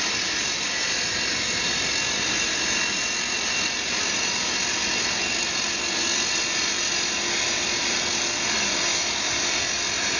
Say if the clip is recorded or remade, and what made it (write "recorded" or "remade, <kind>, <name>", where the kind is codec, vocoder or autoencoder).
recorded